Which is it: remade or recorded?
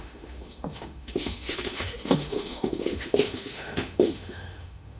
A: remade